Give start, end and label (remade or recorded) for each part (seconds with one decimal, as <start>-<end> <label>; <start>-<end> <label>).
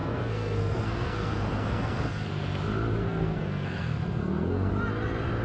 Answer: 0.0-2.3 remade; 2.3-3.0 recorded; 3.0-4.7 remade; 4.7-5.4 recorded